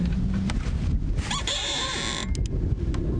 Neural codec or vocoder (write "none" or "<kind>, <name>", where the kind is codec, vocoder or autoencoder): none